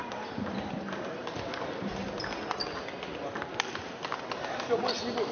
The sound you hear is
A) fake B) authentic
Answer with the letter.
B